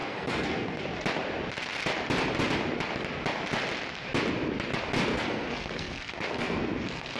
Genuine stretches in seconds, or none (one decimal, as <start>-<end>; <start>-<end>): 0.8-5.1